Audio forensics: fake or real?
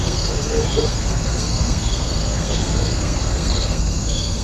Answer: fake